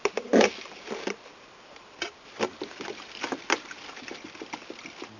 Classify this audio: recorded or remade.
recorded